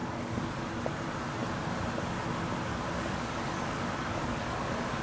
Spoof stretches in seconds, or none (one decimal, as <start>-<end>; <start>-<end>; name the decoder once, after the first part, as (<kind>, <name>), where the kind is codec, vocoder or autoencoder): 0.0-0.7 (codec, DAC); 2.7-5.0